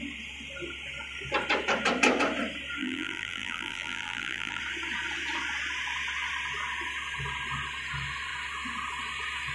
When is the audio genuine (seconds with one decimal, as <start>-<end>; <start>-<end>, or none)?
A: 0.0-2.8; 4.6-9.5